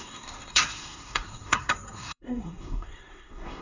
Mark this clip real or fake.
fake